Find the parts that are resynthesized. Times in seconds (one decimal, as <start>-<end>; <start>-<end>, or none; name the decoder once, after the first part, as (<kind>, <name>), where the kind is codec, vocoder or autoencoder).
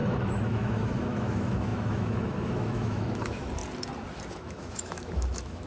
0.0-3.6 (autoencoder, DAC-VAE); 4.3-5.7